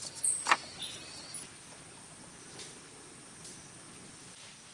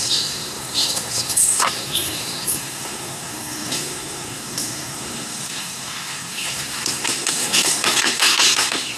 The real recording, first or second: first